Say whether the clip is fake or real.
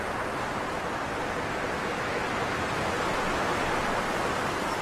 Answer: real